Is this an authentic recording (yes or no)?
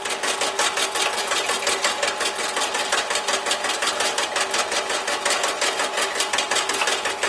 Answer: yes